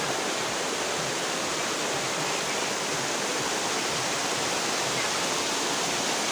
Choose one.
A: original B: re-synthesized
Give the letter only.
A